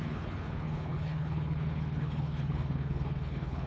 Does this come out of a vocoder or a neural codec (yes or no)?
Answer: yes